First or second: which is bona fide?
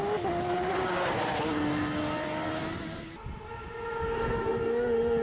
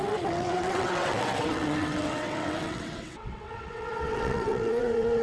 first